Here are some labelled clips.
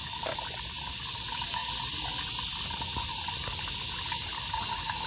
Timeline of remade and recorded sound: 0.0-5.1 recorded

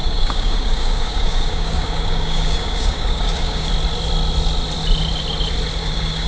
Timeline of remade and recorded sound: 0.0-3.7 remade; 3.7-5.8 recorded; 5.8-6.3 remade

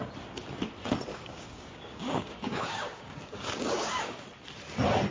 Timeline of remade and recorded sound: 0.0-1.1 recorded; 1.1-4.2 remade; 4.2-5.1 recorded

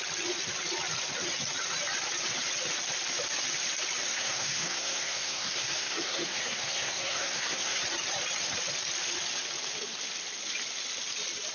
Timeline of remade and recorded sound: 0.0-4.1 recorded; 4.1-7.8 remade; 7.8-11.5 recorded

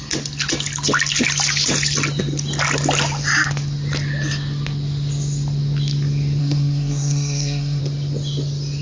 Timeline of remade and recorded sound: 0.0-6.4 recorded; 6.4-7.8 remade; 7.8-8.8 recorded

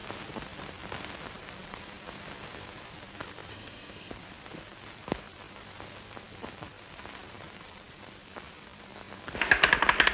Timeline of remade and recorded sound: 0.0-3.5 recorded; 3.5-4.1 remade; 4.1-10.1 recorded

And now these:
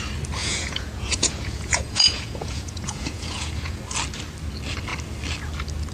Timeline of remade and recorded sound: 0.0-0.4 recorded; 0.4-3.8 remade; 3.8-5.9 recorded

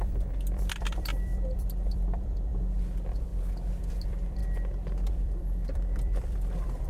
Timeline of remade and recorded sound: 0.0-3.3 remade; 3.3-3.8 recorded; 3.8-4.4 remade; 4.4-5.1 recorded; 5.1-6.9 remade